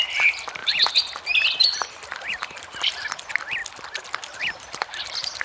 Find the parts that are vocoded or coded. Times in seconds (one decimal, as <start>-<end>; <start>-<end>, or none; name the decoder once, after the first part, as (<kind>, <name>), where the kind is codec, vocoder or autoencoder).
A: 0.0-0.6 (vocoder, BigVGAN v2); 1.6-3.6; 4.4-5.4